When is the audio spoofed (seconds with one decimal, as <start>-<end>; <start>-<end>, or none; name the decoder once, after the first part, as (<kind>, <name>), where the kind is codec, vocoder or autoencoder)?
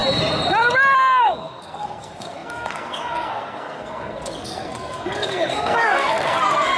1.2-6.8 (codec, SNAC)